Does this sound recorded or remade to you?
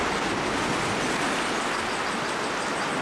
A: recorded